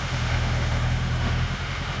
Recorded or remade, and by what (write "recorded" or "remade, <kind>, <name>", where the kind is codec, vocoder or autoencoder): remade, autoencoder, DAC-VAE